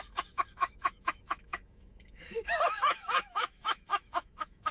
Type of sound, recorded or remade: remade